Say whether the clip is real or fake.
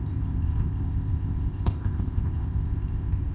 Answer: fake